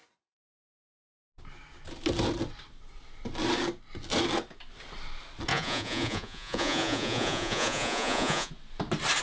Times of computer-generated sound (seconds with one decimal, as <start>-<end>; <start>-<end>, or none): 5.5-8.5